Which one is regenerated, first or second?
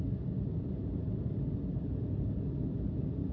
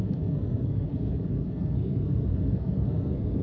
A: second